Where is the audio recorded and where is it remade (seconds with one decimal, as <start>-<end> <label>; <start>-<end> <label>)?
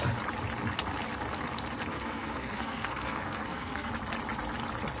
0.0-1.9 recorded; 1.9-3.9 remade; 3.9-5.0 recorded